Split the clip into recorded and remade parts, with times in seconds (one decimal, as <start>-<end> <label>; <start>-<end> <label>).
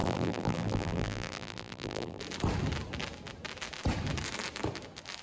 0.0-2.2 remade; 2.2-5.2 recorded